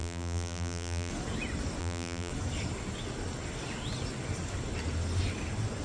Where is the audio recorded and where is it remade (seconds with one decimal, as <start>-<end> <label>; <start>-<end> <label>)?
0.0-1.1 remade; 1.1-1.8 recorded; 1.8-2.3 remade; 2.3-5.8 recorded